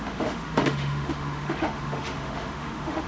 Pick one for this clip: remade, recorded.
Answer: remade